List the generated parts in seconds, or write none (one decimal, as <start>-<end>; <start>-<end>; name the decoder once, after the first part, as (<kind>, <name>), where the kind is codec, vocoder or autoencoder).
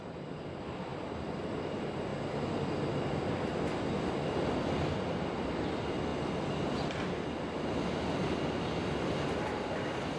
0.0-2.1 (vocoder, BigVGAN v2); 3.1-6.1; 9.4-10.2